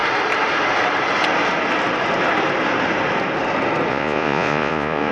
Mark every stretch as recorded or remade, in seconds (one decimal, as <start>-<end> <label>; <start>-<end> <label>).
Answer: 0.0-3.9 recorded; 3.9-5.1 remade